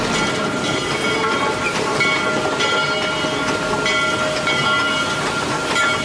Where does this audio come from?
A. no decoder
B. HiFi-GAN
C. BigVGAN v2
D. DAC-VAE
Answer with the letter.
A